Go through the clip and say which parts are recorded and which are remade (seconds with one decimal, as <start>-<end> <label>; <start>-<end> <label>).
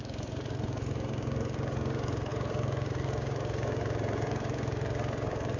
0.0-5.6 remade